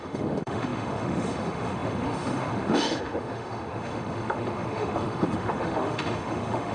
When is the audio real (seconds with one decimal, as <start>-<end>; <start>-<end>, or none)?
none